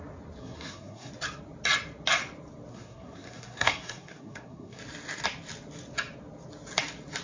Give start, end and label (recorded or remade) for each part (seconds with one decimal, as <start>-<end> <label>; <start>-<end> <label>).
0.0-0.4 recorded; 0.4-1.1 remade; 1.1-2.7 recorded; 2.7-4.8 remade; 4.8-7.2 recorded